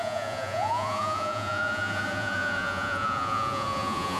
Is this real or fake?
fake